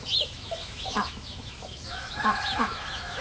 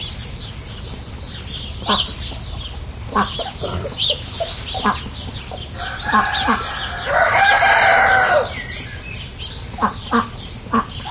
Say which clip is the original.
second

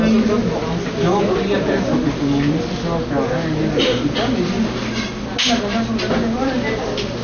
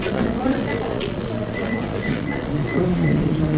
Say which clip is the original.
first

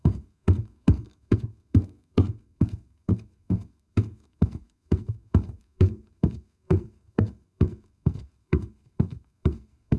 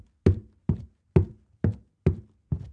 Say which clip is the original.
second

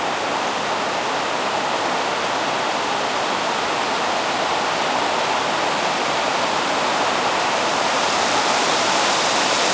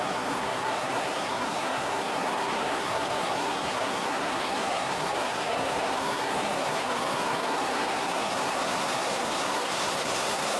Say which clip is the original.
first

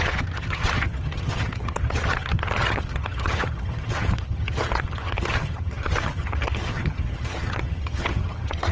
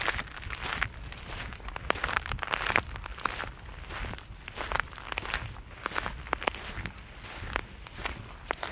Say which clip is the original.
second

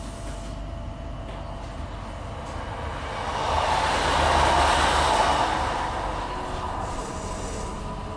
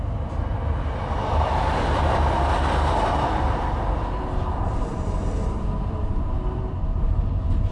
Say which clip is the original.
first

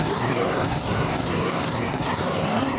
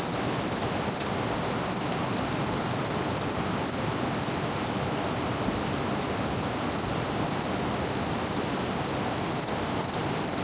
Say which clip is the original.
second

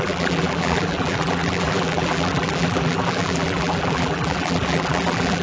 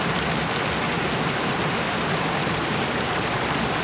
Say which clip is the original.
second